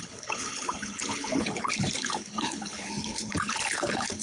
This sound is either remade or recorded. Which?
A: remade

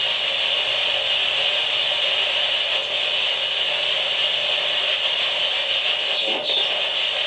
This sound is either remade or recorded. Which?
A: recorded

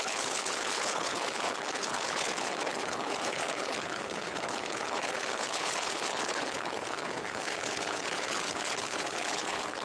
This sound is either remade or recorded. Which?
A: remade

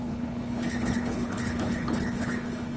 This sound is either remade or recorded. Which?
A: remade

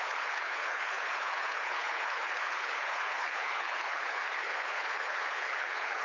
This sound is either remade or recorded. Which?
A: remade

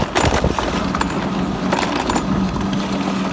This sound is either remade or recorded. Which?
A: recorded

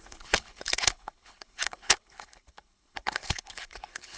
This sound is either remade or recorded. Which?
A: remade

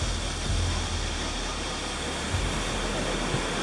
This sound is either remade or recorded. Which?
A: recorded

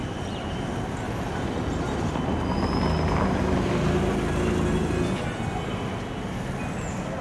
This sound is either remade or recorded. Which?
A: recorded